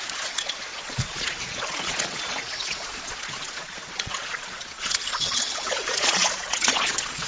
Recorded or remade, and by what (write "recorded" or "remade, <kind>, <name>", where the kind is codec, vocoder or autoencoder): remade, vocoder, Vocos